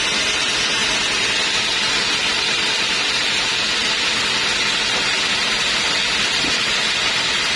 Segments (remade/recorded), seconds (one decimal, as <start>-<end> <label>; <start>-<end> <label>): 0.0-7.6 recorded